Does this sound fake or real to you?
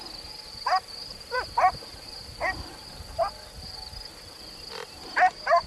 real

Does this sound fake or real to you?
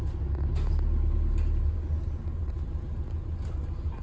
real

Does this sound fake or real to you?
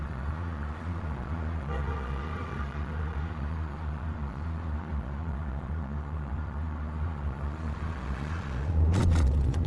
fake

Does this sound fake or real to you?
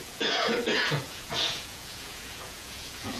fake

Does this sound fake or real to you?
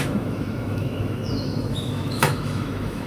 fake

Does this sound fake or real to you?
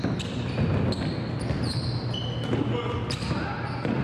real